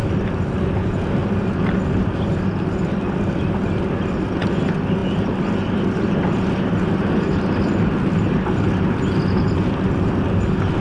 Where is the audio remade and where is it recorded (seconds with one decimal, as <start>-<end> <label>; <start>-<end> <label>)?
0.0-10.8 recorded